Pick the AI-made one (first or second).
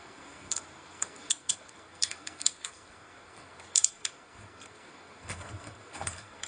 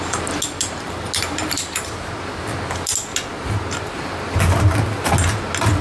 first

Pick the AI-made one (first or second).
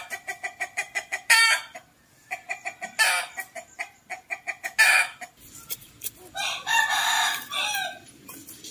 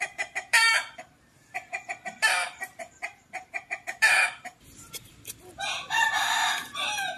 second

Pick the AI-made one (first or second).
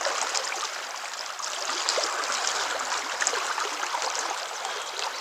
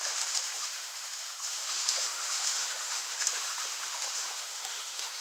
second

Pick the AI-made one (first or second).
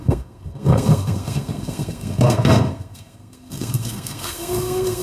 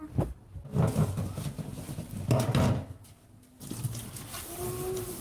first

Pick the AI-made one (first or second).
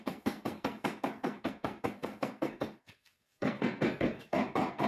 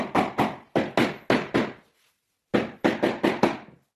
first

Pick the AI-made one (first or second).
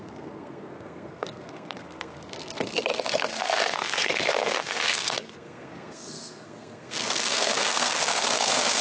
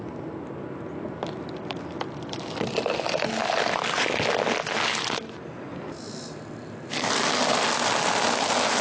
first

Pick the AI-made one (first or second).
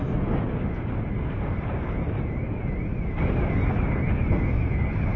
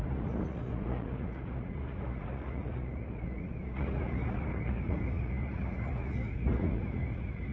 second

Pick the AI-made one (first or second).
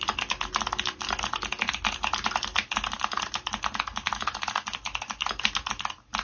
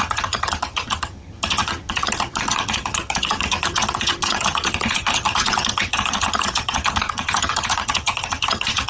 second